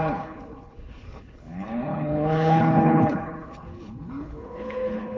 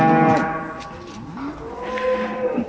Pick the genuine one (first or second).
second